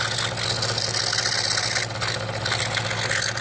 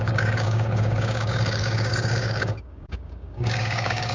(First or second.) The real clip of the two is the first